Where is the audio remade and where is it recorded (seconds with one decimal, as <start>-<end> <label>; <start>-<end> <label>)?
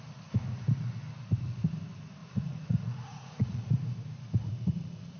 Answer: 0.0-2.2 recorded; 2.2-3.7 remade; 3.7-4.4 recorded; 4.4-5.2 remade